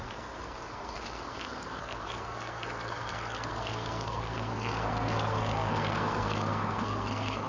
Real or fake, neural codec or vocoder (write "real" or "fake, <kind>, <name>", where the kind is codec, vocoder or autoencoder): fake, codec, SNAC